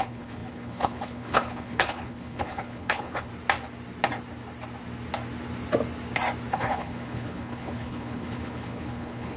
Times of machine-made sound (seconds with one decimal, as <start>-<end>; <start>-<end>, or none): 0.0-3.3; 6.5-9.4